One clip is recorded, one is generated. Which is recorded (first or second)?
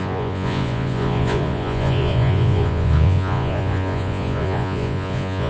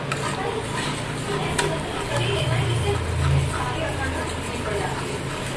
second